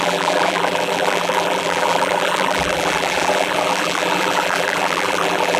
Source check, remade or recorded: remade